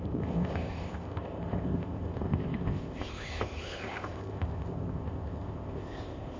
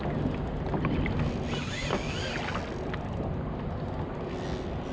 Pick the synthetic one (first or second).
first